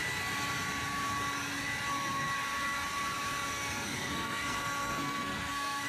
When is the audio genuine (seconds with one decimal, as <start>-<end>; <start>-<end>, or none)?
0.0-3.5